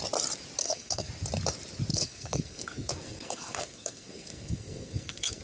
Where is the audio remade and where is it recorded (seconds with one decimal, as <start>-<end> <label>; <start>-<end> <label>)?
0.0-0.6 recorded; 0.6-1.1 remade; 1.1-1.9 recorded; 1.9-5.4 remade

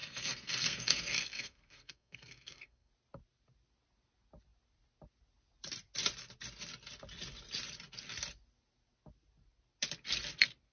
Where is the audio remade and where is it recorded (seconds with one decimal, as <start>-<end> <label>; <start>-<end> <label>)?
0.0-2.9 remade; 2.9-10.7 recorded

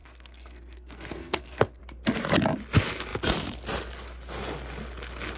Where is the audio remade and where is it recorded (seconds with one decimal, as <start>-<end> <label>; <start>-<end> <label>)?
0.0-1.8 remade; 1.8-5.4 recorded

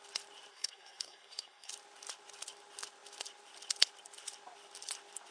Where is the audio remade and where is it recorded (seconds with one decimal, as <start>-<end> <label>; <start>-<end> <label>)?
0.0-0.5 recorded; 0.5-1.7 remade; 1.7-5.3 recorded

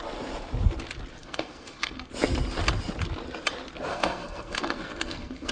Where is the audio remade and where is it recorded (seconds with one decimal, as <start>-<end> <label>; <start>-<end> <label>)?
0.0-1.2 recorded; 1.2-2.1 remade; 2.1-3.9 recorded; 3.9-5.5 remade

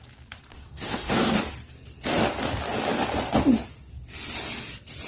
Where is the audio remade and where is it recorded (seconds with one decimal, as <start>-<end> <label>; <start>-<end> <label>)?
0.0-0.5 recorded; 0.5-1.4 remade; 1.4-5.1 recorded